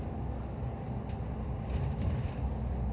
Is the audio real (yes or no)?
yes